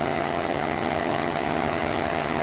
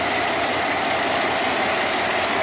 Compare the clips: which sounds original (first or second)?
second